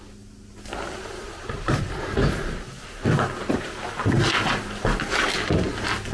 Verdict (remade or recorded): recorded